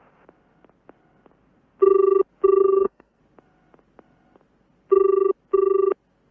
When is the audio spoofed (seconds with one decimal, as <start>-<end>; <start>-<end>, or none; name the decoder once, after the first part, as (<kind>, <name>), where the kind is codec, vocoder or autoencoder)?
2.6-3.2 (codec, SNAC)